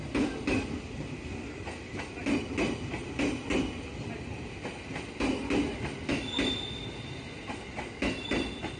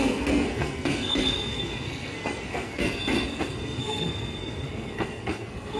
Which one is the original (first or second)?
first